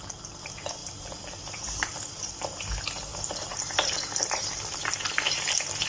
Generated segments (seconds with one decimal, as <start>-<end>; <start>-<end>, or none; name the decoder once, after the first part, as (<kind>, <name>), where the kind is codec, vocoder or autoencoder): 0.8-1.4 (vocoder, BigVGAN v2)